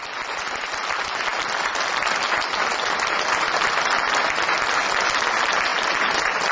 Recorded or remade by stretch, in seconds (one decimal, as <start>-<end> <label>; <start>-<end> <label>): 0.0-6.5 recorded